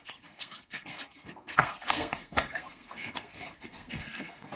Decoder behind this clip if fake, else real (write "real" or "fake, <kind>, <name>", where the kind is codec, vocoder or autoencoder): fake, codec, SNAC